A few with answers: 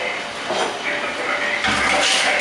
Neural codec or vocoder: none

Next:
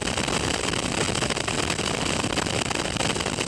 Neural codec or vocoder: none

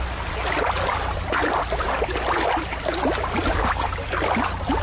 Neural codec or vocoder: none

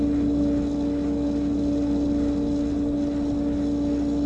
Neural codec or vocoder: none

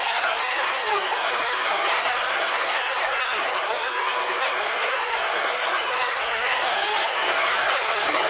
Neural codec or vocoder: codec, SNAC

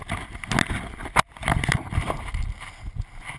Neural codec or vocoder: none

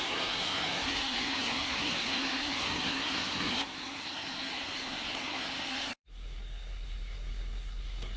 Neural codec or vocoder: codec, SNAC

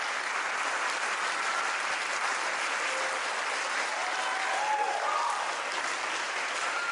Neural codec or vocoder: none